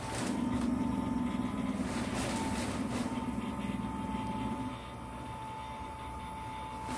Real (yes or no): yes